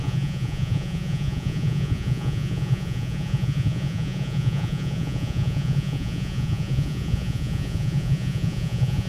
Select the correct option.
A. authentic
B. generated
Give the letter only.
B